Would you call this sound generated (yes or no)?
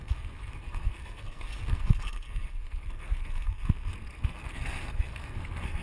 yes